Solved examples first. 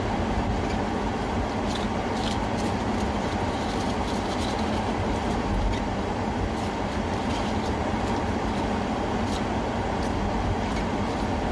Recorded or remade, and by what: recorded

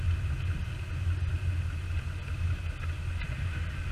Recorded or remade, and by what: recorded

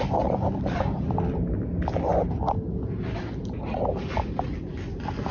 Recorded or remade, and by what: recorded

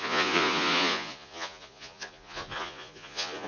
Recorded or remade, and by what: remade, vocoder, Vocos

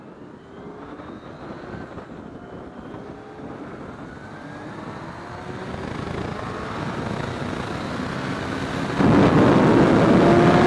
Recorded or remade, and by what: recorded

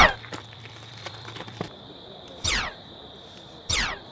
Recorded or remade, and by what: remade, vocoder, BigVGAN v2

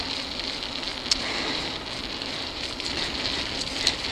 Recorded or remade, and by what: recorded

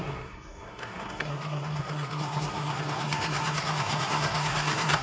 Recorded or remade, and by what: remade, codec, SNAC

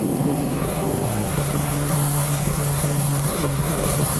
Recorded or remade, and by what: remade, codec, SNAC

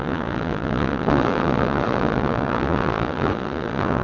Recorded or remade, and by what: remade, vocoder, Vocos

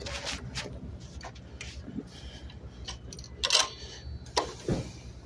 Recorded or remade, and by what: recorded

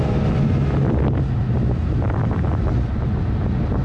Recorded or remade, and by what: recorded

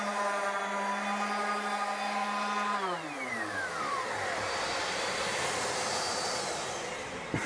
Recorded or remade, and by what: recorded